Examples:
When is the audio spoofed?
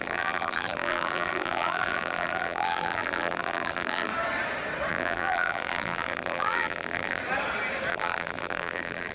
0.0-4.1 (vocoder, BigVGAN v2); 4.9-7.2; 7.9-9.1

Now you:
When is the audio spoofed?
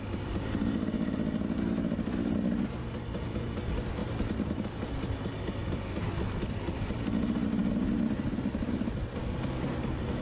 4.0-4.9 (vocoder, BigVGAN v2); 5.6-6.9; 7.6-8.4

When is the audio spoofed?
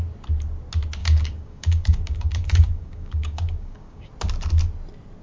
1.0-4.1 (codec, DAC)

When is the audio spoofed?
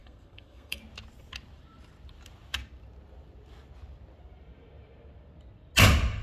0.0-0.8 (codec, SNAC)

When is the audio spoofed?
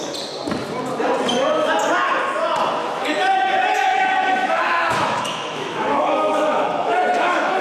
2.8-7.6 (autoencoder, DAC-VAE)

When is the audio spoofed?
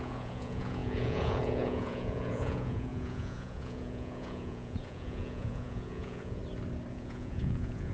0.0-6.4 (vocoder, Vocos); 6.9-7.9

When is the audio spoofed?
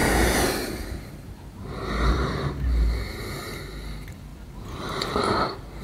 0.0-2.1 (vocoder, BigVGAN v2); 4.3-5.8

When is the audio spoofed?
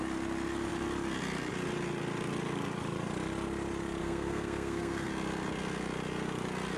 4.0-5.1 (codec, SNAC)